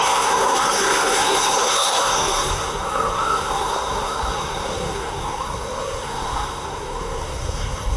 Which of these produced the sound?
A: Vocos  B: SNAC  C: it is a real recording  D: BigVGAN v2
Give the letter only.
B